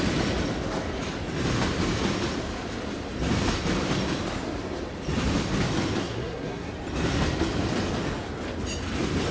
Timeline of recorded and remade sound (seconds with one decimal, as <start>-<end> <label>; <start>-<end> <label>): 0.0-6.0 recorded; 6.0-6.7 remade; 6.7-9.3 recorded